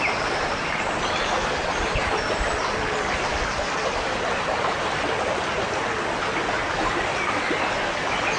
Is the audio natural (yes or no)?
yes